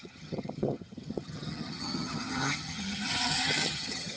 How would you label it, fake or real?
fake